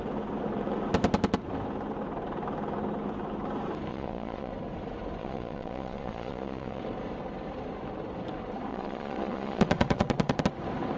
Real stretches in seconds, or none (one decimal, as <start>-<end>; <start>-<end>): 0.0-3.9; 4.5-5.2; 6.8-8.7; 10.4-11.0